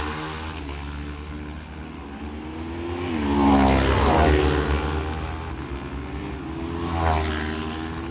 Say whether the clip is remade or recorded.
recorded